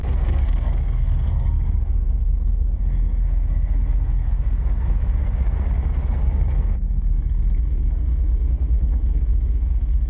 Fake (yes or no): yes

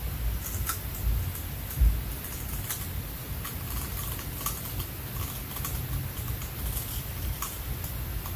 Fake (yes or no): no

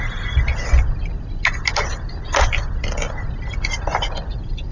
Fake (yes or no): no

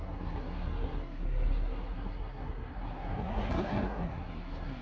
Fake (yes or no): yes